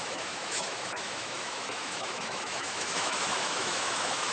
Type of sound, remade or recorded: remade